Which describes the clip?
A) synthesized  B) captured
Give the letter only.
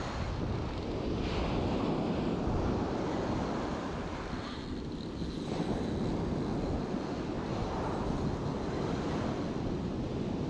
B